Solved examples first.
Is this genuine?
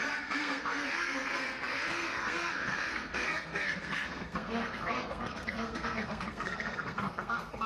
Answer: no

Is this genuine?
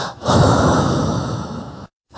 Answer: no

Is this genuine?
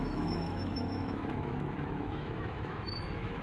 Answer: no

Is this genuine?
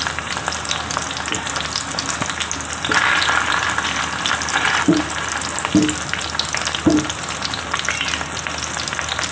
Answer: yes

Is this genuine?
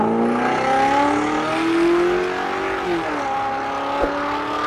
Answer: yes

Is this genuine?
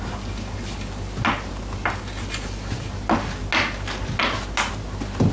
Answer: yes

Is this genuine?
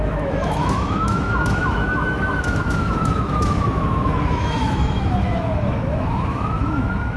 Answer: no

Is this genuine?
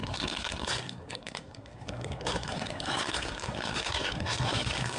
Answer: no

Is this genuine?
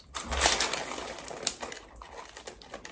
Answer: yes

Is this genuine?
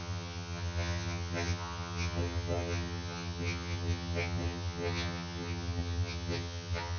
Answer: no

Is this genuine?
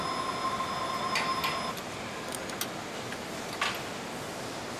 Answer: yes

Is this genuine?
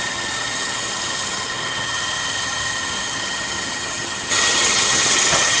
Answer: no